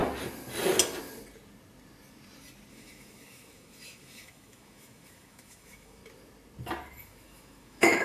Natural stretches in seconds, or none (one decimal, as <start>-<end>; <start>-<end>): 0.0-2.7; 6.0-7.0